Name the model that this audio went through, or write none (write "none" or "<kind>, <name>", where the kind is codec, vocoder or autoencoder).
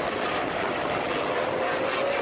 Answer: none